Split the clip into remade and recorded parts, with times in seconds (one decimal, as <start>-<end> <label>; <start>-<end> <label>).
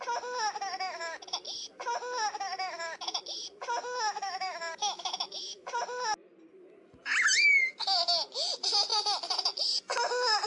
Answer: 0.0-3.6 recorded; 3.6-5.8 remade; 5.8-10.5 recorded